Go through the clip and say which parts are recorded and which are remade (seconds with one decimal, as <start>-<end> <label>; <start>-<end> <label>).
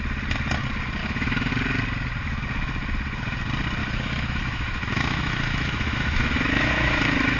0.0-1.0 recorded; 1.0-1.5 remade; 1.5-3.8 recorded; 3.8-7.0 remade; 7.0-7.4 recorded